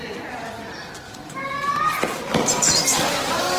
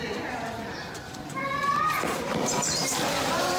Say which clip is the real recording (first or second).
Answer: first